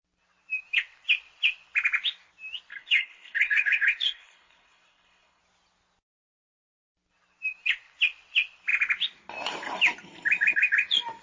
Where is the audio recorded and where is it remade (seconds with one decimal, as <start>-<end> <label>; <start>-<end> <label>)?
0.0-2.7 recorded; 2.7-5.4 remade; 5.4-11.2 recorded